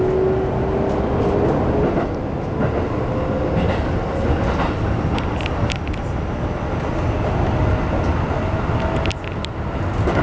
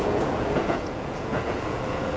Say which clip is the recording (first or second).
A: first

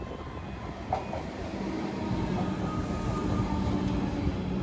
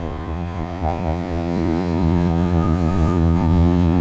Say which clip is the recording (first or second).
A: first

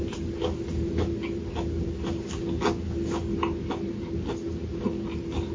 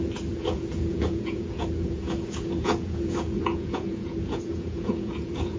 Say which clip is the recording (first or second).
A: first